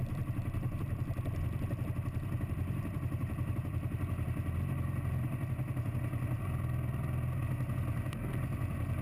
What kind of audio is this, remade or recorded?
remade